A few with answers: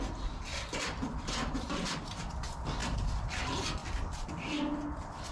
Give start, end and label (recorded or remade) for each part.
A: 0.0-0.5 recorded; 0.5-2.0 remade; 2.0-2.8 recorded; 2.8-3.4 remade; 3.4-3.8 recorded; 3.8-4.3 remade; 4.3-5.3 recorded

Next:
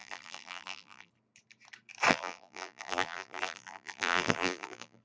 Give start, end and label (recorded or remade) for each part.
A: 0.0-1.1 remade; 1.1-2.1 recorded; 2.1-5.0 remade

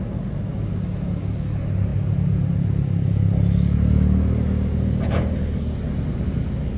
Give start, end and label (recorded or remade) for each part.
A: 0.0-6.8 recorded

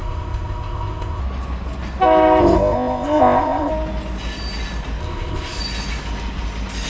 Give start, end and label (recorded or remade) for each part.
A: 0.0-1.2 remade; 1.2-2.4 recorded; 2.4-3.7 remade; 3.7-5.0 recorded; 5.0-5.6 remade; 5.6-6.9 recorded

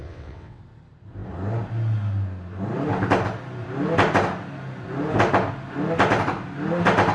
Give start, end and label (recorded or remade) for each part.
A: 0.0-0.6 remade; 0.6-7.1 recorded

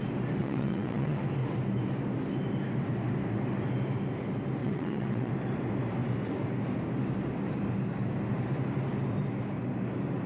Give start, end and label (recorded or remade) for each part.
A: 0.0-0.4 recorded; 0.4-1.2 remade; 1.2-4.6 recorded; 4.6-5.3 remade; 5.3-10.3 recorded

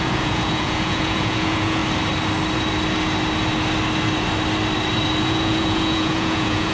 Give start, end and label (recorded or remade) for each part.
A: 0.0-1.8 remade; 1.8-5.2 recorded; 5.2-6.7 remade

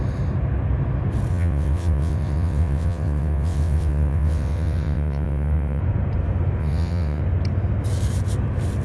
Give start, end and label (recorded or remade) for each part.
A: 0.0-1.3 recorded; 1.3-5.8 remade; 5.8-6.6 recorded; 6.6-7.2 remade; 7.2-8.8 recorded